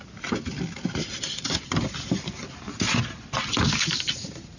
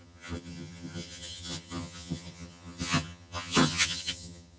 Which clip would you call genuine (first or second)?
first